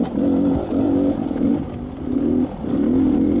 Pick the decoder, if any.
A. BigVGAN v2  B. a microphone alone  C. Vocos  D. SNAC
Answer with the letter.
B